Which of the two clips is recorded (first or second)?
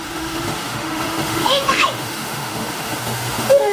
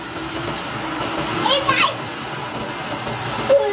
second